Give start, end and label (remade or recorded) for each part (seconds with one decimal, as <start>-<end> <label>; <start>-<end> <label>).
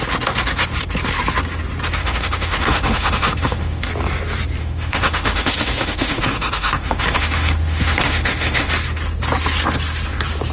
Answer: 0.0-2.0 recorded; 2.0-3.9 remade; 3.9-4.6 recorded; 4.6-8.7 remade; 8.7-10.5 recorded